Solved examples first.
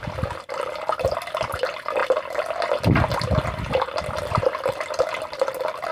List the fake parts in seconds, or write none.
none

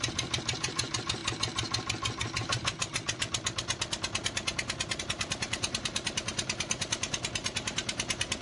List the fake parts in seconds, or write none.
0.0-1.2 (vocoder, BigVGAN v2); 5.0-8.4

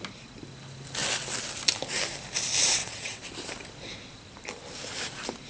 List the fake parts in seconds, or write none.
2.8-3.3 (vocoder, WaveNeXt)

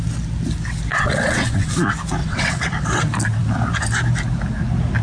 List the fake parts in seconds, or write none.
0.9-1.7 (vocoder, WaveNeXt); 2.2-3.0